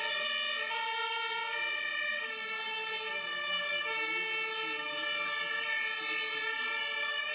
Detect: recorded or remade recorded